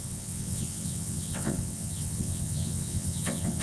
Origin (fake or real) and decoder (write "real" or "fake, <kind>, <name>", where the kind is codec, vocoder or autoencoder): fake, vocoder, WaveNeXt